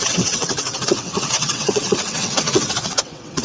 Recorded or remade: remade